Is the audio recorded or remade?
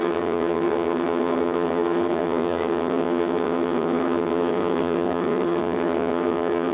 remade